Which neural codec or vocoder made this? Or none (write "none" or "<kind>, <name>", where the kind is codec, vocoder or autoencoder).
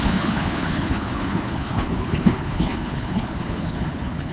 codec, HILCodec